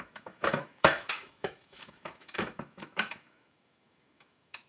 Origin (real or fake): fake